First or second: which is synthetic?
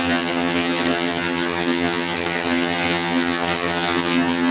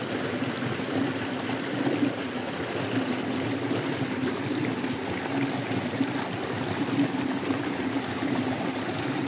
first